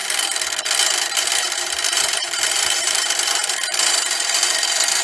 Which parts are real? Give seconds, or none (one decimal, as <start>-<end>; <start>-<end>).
0.0-1.2